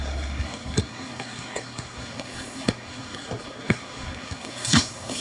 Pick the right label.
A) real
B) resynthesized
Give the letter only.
B